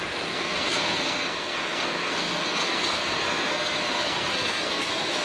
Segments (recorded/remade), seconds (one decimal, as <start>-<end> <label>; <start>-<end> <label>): 0.0-5.2 remade